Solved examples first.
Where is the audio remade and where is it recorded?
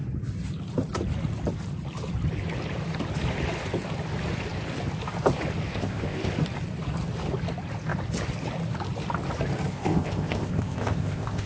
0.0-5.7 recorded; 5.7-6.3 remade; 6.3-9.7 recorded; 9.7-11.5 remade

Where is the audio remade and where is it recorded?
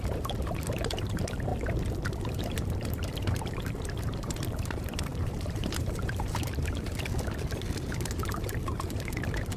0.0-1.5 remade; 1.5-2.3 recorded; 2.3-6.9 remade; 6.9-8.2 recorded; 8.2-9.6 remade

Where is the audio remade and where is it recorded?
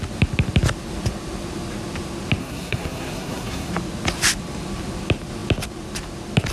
0.0-2.4 recorded; 2.4-3.7 remade; 3.7-6.5 recorded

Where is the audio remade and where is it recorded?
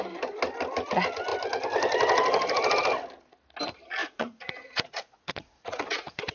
0.0-4.0 recorded; 4.0-6.3 remade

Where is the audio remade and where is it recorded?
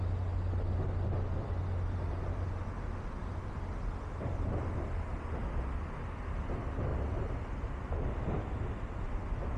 0.0-9.6 recorded